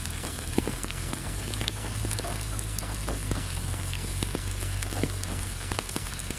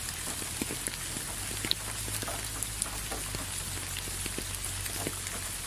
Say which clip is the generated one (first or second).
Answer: first